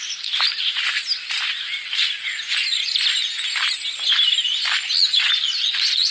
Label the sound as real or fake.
real